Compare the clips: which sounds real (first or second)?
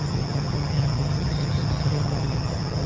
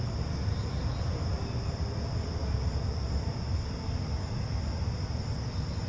second